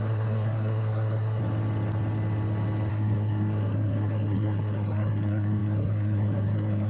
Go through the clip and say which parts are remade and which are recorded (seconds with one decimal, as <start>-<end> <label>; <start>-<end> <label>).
0.0-1.4 remade; 1.4-2.9 recorded; 2.9-6.9 remade

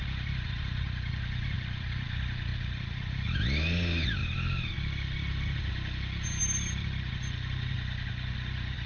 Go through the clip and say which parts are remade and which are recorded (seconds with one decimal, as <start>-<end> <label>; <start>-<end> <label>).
0.0-2.5 recorded; 2.5-3.2 remade; 3.2-4.2 recorded; 4.2-4.7 remade; 4.7-8.9 recorded

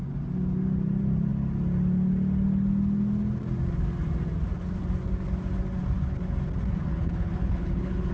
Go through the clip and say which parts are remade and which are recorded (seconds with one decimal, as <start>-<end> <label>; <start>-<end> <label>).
0.0-6.9 recorded; 6.9-8.1 remade